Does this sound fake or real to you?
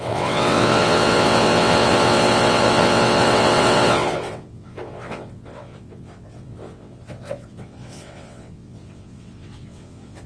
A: fake